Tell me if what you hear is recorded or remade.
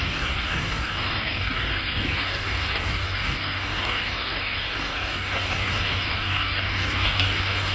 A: remade